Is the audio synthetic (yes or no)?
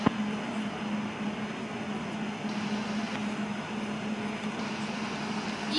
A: no